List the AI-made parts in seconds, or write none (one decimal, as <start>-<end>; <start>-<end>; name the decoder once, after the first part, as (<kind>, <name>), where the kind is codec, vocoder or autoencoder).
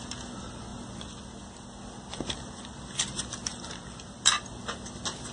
none